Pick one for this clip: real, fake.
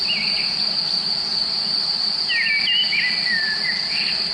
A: real